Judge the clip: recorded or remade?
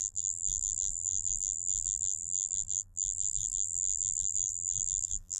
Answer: remade